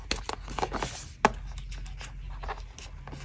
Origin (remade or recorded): recorded